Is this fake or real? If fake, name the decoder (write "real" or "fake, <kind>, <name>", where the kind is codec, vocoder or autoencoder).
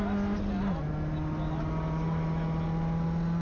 real